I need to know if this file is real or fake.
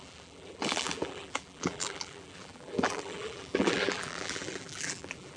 fake